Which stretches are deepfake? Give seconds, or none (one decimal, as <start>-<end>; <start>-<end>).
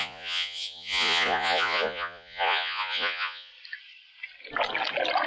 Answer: 0.0-3.5